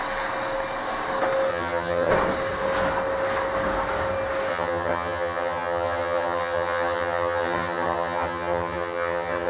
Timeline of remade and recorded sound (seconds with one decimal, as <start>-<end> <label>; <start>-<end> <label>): 0.0-1.5 recorded; 1.5-2.1 remade; 2.1-4.5 recorded; 4.5-9.5 remade